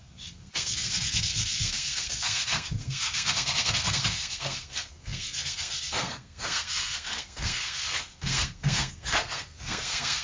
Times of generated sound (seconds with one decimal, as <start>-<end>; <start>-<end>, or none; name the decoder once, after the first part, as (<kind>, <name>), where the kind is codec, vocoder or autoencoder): 0.0-10.2 (codec, SNAC)